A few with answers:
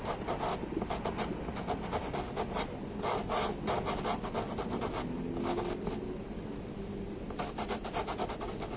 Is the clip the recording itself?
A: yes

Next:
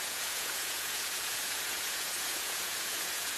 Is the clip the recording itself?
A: no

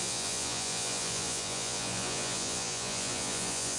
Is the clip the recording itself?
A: no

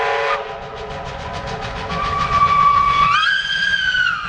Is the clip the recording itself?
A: no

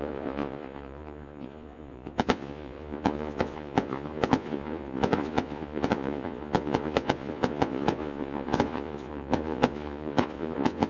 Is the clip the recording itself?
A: no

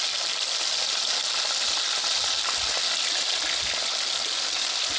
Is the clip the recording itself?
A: yes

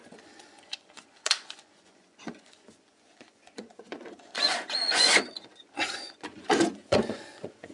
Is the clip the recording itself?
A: no